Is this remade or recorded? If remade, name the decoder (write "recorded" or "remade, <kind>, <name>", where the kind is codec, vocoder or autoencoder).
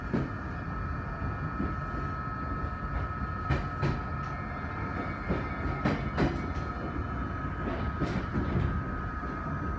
recorded